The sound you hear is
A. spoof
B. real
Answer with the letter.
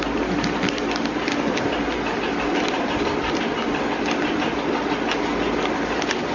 B